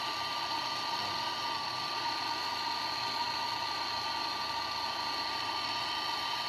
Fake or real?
real